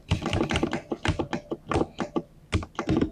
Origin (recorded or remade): recorded